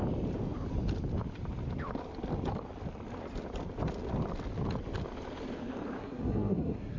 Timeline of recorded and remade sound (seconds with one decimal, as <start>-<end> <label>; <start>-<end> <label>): 0.0-6.0 recorded; 6.0-7.0 remade